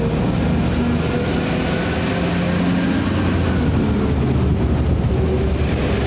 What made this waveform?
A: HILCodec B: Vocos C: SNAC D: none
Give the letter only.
D